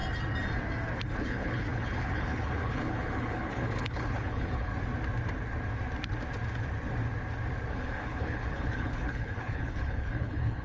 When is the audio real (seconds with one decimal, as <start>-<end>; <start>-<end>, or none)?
0.0-1.2; 4.7-7.7